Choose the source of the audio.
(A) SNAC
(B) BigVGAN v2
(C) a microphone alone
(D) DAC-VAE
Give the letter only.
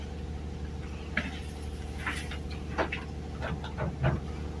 C